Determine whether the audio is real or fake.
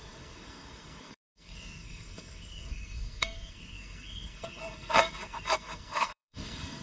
fake